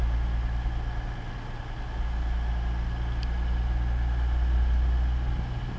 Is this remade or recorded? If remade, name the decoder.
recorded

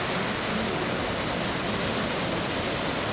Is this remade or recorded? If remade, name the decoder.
recorded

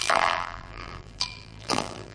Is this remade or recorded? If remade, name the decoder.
remade, vocoder, BigVGAN v2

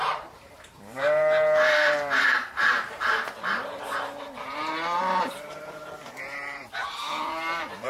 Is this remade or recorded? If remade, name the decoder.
remade, vocoder, BigVGAN v2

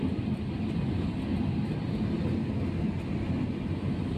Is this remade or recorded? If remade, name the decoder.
recorded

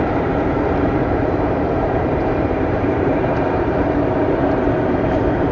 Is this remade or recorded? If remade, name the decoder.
remade, vocoder, BigVGAN v2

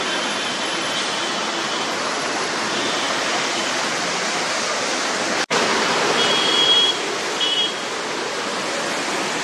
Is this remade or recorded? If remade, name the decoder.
remade, vocoder, BigVGAN v2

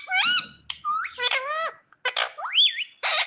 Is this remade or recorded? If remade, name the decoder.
recorded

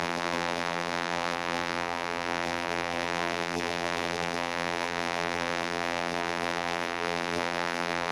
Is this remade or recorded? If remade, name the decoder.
remade, vocoder, BigVGAN v2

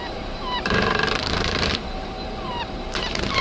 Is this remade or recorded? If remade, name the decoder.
remade, vocoder, BigVGAN v2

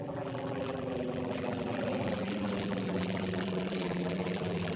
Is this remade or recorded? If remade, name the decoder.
remade, vocoder, BigVGAN v2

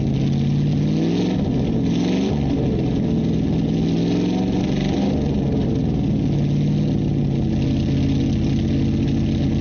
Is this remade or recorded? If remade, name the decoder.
recorded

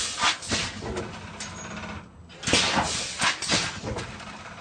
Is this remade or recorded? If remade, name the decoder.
recorded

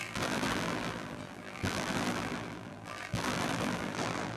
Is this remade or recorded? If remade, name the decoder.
remade, vocoder, BigVGAN v2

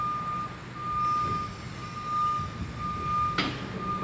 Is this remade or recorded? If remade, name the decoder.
recorded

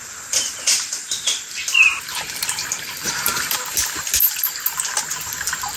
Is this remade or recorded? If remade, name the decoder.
remade, vocoder, BigVGAN v2